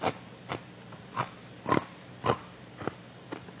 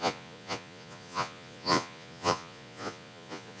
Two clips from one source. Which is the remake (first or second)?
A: second